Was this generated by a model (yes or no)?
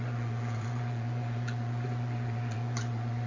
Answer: yes